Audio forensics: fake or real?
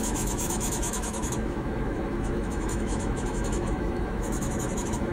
fake